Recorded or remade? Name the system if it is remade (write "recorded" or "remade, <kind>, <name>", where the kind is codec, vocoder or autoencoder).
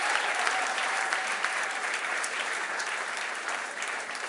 remade, vocoder, BigVGAN v2